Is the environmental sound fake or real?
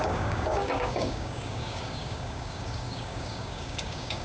fake